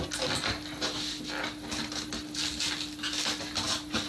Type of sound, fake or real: real